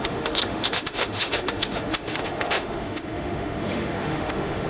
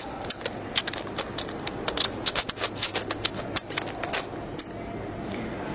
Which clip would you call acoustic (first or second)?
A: second